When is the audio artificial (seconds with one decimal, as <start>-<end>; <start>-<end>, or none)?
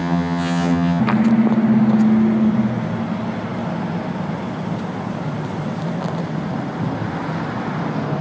0.0-1.0